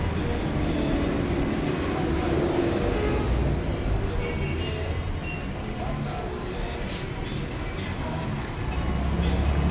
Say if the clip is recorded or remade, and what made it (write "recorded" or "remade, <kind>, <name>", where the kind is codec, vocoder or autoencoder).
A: recorded